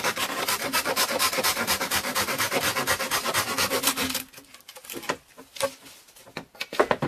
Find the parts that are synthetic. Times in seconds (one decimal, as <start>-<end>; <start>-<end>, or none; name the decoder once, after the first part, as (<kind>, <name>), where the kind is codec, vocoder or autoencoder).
0.0-2.5 (vocoder, BigVGAN v2); 6.6-7.1